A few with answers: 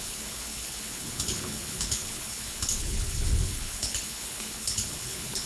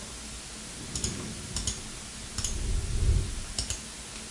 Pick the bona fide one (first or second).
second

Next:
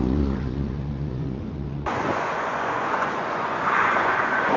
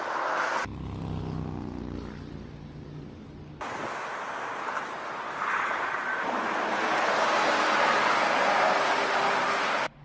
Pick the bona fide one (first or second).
second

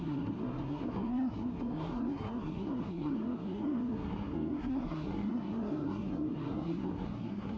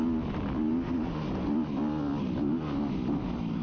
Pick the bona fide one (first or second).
second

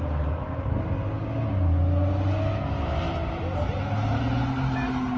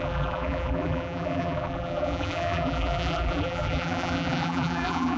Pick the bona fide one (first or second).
first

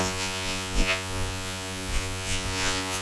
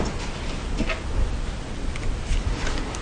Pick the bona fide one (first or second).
second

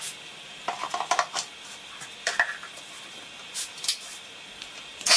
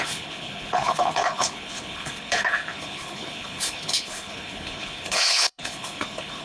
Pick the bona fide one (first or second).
first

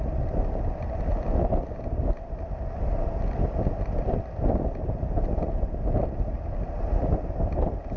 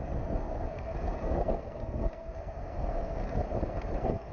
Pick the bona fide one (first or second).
first